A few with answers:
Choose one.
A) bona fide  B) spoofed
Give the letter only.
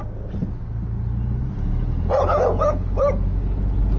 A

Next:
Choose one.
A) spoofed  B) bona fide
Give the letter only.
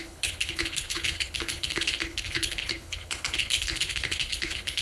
A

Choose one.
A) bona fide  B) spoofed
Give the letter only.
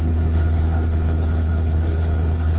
B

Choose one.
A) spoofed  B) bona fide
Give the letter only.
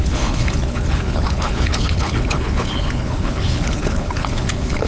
A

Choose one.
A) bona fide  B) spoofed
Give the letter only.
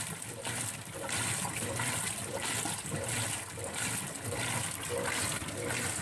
A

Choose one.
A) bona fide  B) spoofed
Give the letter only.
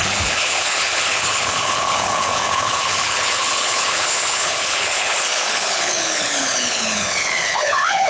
B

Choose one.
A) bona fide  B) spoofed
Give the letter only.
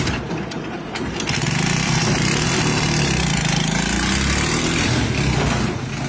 A